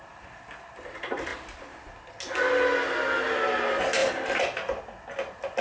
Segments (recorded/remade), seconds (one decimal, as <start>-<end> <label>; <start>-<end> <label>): 0.0-5.6 recorded